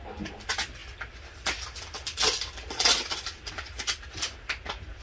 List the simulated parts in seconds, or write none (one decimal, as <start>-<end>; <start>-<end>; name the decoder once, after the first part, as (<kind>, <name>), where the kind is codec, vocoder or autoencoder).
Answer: none